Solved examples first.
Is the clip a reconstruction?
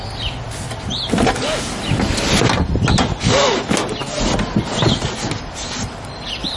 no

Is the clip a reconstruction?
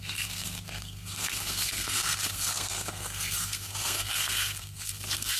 yes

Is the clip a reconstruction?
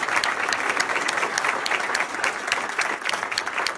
no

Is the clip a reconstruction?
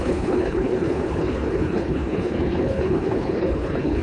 yes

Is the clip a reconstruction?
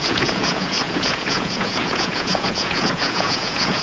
yes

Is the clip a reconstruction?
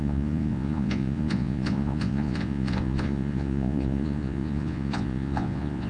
yes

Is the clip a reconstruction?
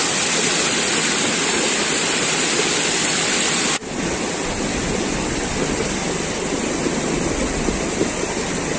no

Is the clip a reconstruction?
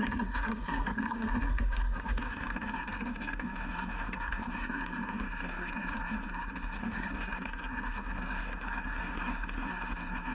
yes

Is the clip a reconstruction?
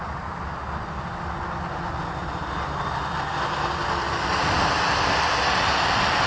no